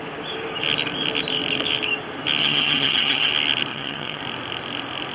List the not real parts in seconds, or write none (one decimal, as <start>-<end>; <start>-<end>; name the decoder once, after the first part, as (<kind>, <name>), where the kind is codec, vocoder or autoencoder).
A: 2.4-3.3 (vocoder, HiFi-GAN); 3.7-4.2

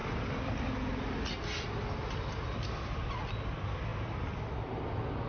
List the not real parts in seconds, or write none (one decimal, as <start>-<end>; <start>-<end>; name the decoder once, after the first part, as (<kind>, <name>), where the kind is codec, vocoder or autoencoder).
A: none

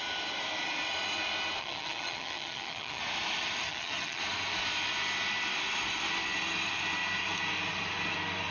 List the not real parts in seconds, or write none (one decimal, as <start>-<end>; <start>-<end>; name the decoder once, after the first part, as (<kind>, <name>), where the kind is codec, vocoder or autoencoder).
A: 1.6-3.0 (vocoder, HiFi-GAN); 3.6-4.2

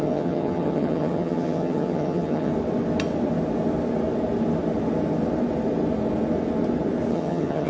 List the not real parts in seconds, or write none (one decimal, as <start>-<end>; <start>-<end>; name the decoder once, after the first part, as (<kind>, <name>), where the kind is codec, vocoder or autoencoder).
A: 0.0-2.5 (vocoder, HiFi-GAN); 7.1-7.7